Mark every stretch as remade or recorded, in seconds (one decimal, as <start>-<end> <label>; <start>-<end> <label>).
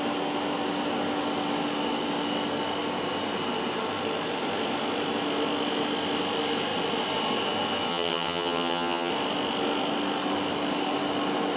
0.0-7.9 recorded; 7.9-9.1 remade; 9.1-11.6 recorded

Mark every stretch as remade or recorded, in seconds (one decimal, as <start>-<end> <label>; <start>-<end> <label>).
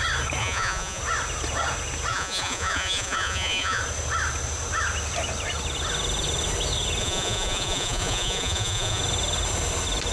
0.0-0.4 recorded; 0.4-1.0 remade; 1.0-2.1 recorded; 2.1-3.8 remade; 3.8-7.0 recorded; 7.0-9.0 remade; 9.0-10.1 recorded